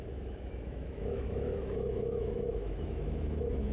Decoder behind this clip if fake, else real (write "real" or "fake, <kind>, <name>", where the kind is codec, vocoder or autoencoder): fake, autoencoder, DAC-VAE